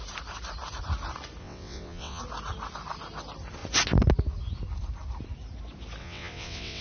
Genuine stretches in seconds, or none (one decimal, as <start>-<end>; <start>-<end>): 0.0-1.4; 2.2-6.0